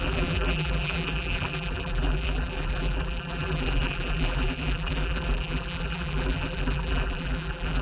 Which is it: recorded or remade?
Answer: remade